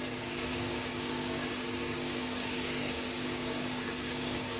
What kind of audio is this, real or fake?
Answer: fake